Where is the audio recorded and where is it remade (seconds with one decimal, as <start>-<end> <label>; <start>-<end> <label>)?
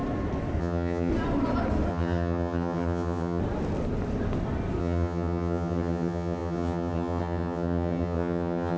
0.0-0.6 recorded; 0.6-1.1 remade; 1.1-1.9 recorded; 1.9-3.4 remade; 3.4-4.8 recorded; 4.8-8.8 remade